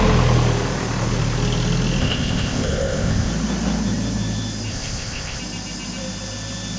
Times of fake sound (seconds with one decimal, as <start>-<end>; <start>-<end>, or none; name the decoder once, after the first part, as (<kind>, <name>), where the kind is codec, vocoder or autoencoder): 2.0-3.3 (codec, ZipCodec); 4.7-5.4